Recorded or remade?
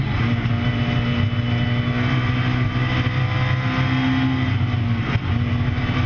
recorded